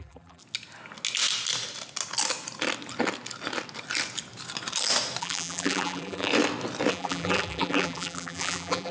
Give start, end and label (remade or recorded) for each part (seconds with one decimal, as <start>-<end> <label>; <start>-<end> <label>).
0.0-0.4 remade; 0.4-5.2 recorded; 5.2-6.3 remade; 6.3-6.9 recorded; 6.9-8.9 remade

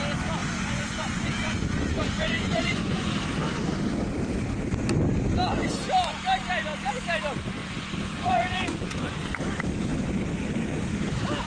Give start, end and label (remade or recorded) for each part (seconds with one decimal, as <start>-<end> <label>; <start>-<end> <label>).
0.0-0.4 recorded; 0.4-3.1 remade; 3.1-7.6 recorded; 7.6-9.4 remade; 9.4-11.5 recorded

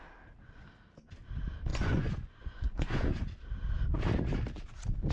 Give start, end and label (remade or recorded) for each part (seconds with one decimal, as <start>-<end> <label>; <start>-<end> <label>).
0.0-1.7 recorded; 1.7-3.2 remade; 3.2-5.1 recorded

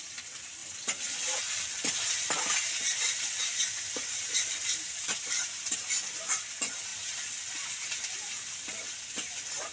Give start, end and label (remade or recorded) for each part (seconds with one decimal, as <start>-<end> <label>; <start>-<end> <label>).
0.0-3.5 recorded; 3.5-5.8 remade; 5.8-9.7 recorded

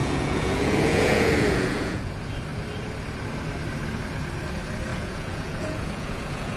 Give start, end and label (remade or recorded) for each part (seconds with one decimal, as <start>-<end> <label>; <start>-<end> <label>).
0.0-2.1 remade; 2.1-4.9 recorded; 4.9-6.6 remade

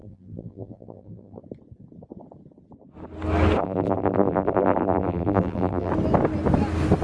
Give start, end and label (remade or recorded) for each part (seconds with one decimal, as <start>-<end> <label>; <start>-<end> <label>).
0.0-1.4 remade; 1.4-3.6 recorded; 3.6-5.9 remade; 5.9-7.0 recorded